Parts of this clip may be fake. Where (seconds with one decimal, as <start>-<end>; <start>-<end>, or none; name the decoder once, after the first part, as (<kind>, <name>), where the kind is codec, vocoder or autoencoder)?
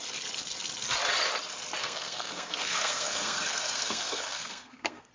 1.8-5.1 (codec, SNAC)